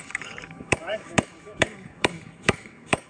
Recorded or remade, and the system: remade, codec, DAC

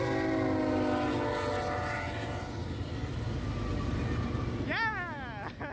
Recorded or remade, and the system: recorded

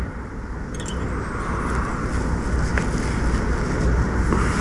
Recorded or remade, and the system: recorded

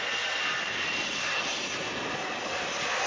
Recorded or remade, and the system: recorded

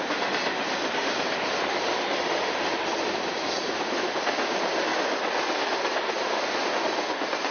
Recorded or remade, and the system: recorded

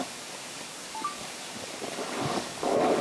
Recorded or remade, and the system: remade, codec, DAC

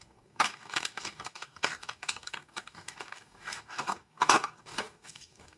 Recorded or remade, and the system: remade, codec, DAC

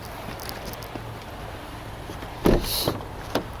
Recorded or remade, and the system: recorded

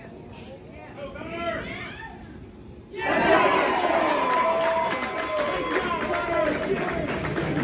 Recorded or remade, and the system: recorded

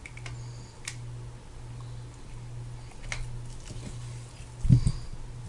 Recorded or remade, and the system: recorded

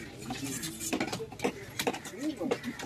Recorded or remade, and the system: recorded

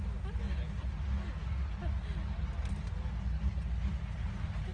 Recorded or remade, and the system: recorded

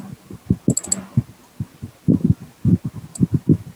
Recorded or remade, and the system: recorded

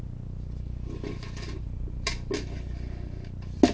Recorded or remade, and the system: recorded